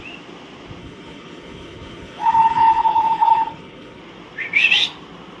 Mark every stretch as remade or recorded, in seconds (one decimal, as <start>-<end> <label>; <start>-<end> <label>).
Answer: 0.0-0.8 recorded; 0.8-4.0 remade; 4.0-5.4 recorded